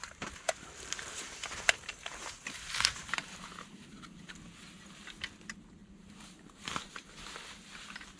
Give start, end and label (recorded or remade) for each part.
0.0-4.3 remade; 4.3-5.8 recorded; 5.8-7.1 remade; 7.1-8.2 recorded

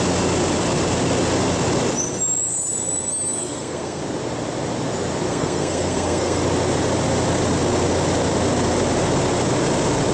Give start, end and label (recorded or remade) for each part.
0.0-3.4 recorded; 3.4-4.0 remade; 4.0-5.3 recorded; 5.3-6.4 remade; 6.4-10.1 recorded

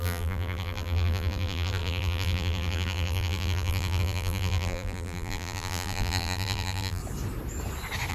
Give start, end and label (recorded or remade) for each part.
0.0-7.0 remade; 7.0-8.1 recorded

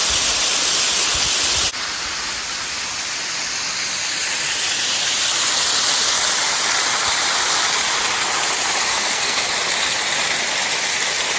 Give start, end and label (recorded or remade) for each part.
0.0-8.9 recorded; 8.9-9.5 remade; 9.5-11.4 recorded

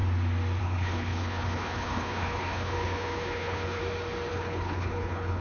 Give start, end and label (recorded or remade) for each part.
0.0-0.6 recorded; 0.6-3.8 remade; 3.8-4.3 recorded; 4.3-5.4 remade